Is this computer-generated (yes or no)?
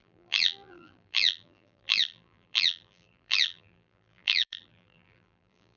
yes